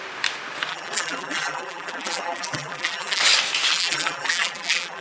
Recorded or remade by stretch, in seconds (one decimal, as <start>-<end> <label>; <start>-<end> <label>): 0.0-0.7 recorded; 0.7-3.2 remade; 3.2-3.7 recorded; 3.7-5.0 remade